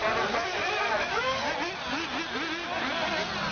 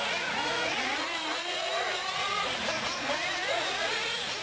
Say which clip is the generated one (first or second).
second